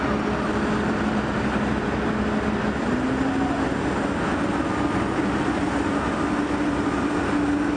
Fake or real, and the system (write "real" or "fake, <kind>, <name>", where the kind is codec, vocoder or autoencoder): real